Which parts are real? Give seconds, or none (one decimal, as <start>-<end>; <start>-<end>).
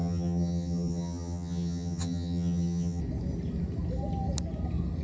3.0-5.0